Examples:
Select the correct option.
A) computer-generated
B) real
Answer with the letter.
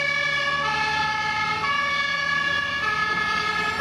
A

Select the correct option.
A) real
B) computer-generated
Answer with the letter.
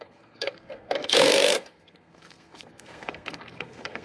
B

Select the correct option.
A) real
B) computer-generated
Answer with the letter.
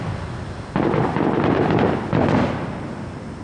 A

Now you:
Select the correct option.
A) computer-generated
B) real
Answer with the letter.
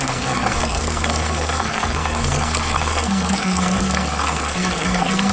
A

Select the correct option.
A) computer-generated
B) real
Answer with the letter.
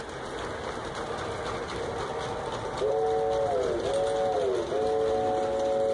B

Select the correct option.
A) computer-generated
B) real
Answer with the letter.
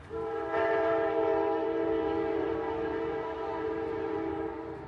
A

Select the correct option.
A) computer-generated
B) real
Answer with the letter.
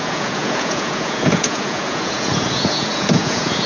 A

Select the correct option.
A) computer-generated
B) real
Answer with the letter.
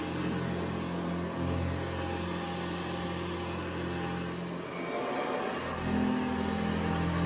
B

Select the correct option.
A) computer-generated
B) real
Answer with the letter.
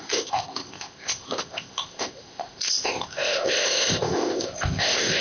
A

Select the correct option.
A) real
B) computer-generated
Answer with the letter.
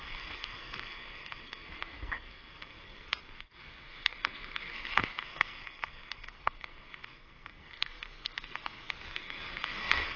B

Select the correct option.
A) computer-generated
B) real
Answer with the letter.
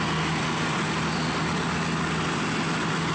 B